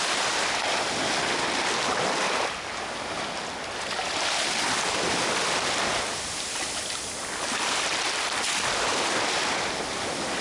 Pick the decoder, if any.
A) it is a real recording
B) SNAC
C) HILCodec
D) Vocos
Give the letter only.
A